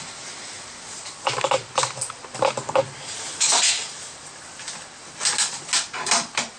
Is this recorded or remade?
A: recorded